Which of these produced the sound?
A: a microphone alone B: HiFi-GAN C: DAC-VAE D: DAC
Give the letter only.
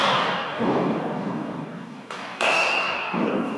D